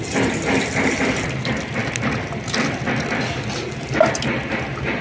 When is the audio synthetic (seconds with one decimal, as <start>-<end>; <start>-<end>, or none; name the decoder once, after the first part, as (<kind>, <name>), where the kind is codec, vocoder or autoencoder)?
none